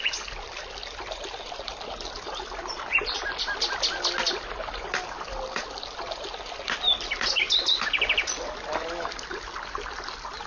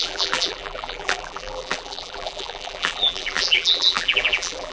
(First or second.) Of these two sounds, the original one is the first